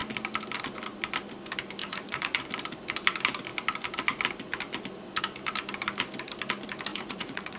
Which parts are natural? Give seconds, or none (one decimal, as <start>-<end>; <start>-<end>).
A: 0.0-1.8; 2.4-6.9

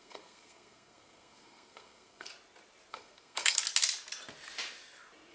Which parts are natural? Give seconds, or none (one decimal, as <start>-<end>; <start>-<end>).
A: 2.3-2.9; 3.6-5.3